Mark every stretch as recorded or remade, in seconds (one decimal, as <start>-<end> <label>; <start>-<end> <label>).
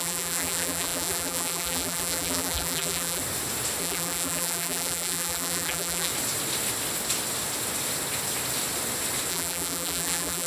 0.0-3.2 remade; 3.2-3.8 recorded; 3.8-6.1 remade; 6.1-9.3 recorded; 9.3-10.5 remade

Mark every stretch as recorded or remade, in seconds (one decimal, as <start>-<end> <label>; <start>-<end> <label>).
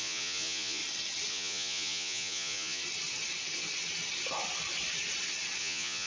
0.0-0.8 remade; 0.8-1.3 recorded; 1.3-2.8 remade; 2.8-5.6 recorded; 5.6-6.1 remade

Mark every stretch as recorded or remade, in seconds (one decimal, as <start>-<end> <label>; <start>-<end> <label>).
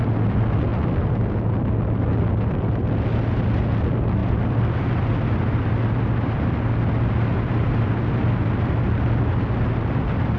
0.0-4.2 recorded; 4.2-6.5 remade; 6.5-10.4 recorded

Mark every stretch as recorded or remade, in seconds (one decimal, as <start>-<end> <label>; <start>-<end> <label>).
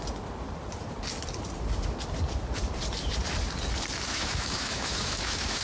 0.0-4.1 recorded; 4.1-5.6 remade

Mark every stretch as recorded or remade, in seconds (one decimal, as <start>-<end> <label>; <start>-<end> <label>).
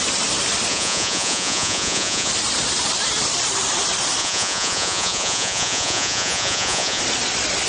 0.0-0.7 recorded; 0.7-2.3 remade; 2.3-4.2 recorded; 4.2-7.0 remade; 7.0-7.7 recorded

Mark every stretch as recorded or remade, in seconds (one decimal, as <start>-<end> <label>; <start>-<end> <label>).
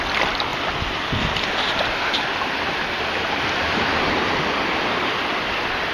0.0-0.5 recorded; 0.5-4.0 remade; 4.0-5.3 recorded; 5.3-5.9 remade